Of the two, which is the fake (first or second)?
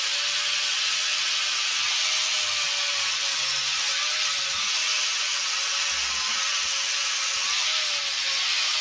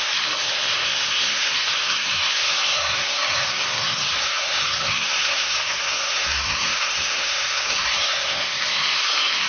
second